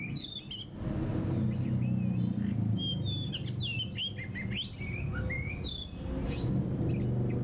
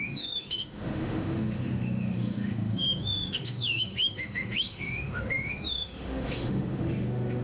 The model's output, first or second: second